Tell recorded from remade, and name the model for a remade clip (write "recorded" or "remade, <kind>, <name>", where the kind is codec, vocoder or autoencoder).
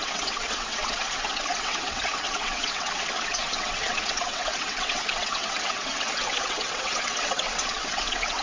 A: remade, vocoder, WaveNeXt